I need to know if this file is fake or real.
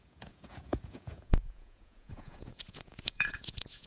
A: fake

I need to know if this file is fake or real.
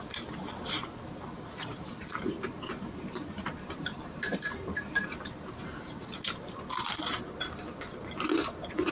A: fake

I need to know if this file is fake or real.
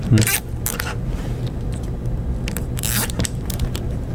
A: fake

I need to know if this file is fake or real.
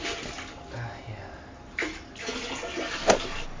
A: real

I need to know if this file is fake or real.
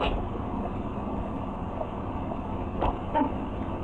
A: fake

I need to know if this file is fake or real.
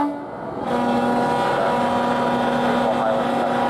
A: real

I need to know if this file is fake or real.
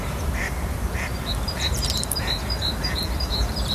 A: fake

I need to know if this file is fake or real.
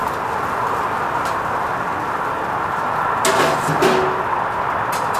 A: real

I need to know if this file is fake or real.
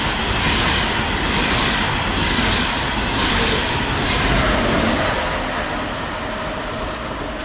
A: real